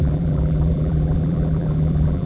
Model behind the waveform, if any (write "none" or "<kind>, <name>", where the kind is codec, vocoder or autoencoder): vocoder, BigVGAN v2